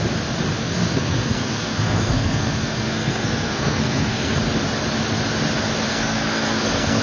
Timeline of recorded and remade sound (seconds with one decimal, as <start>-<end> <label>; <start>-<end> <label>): 0.0-0.6 recorded; 0.6-4.4 remade; 4.4-5.9 recorded; 5.9-7.0 remade